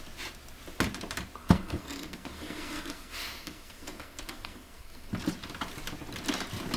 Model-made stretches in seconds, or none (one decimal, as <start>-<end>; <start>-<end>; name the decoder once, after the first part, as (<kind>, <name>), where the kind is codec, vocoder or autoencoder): 1.4-5.1 (codec, SNAC)